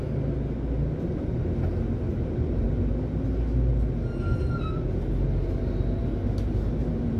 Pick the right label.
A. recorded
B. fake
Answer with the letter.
A